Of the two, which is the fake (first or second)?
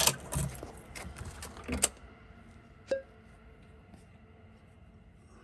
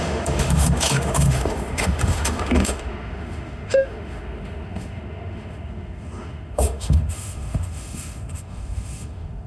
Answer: second